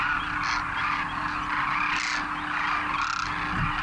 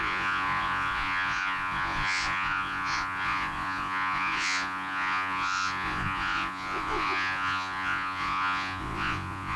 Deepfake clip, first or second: second